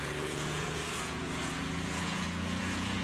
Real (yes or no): no